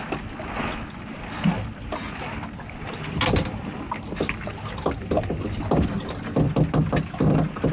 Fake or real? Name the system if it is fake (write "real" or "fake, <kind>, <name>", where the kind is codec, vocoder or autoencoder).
real